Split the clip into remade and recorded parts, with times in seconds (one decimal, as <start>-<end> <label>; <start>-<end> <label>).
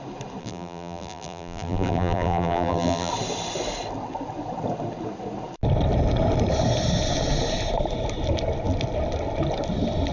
0.0-0.4 recorded; 0.4-3.1 remade; 3.1-10.1 recorded